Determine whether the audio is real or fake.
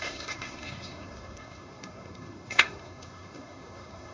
fake